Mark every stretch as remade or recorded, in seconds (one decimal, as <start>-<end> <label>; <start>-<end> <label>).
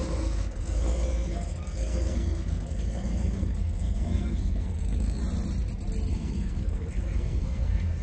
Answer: 0.0-5.2 remade; 5.2-6.1 recorded; 6.1-8.0 remade